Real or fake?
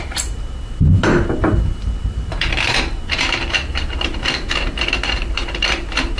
fake